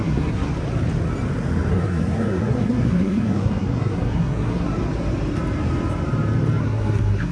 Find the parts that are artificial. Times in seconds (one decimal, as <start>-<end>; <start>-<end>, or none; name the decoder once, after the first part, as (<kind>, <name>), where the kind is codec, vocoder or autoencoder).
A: 0.0-0.5 (codec, SNAC); 1.7-4.7; 6.6-7.3